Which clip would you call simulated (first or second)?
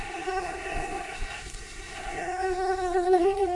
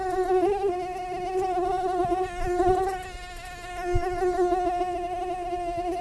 first